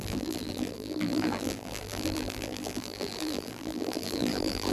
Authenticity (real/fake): fake